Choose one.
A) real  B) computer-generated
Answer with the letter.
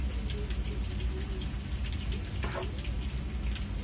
A